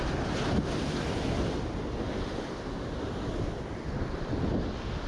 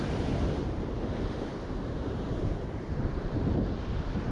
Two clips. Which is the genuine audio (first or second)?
first